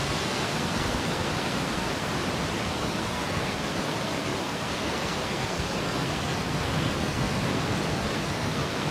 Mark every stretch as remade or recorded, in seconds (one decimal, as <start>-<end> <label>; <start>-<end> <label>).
0.0-2.1 remade; 2.1-2.6 recorded; 2.6-8.9 remade